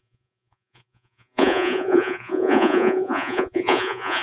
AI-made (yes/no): yes